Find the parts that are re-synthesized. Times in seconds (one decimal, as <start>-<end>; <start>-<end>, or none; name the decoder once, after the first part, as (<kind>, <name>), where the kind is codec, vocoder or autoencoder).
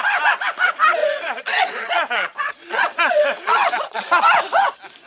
1.0-4.1 (vocoder, Vocos)